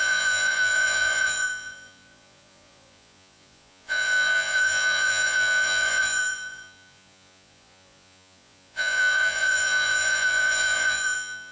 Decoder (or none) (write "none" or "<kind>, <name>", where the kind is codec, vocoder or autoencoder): vocoder, Vocos